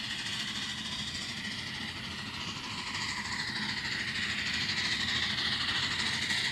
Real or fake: real